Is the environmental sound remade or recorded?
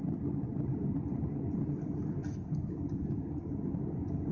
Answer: recorded